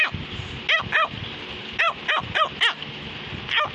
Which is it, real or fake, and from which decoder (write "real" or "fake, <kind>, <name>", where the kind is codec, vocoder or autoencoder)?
real